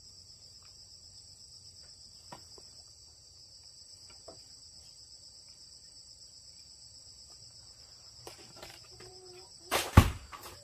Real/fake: fake